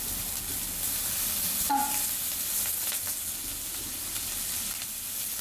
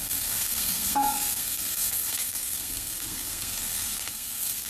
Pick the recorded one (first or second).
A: first